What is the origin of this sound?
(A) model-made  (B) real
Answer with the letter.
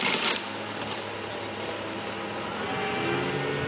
B